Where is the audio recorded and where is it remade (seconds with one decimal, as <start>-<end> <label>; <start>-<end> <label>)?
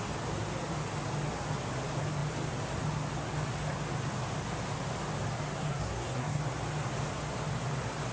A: 0.0-5.6 recorded; 5.6-6.4 remade; 6.4-8.1 recorded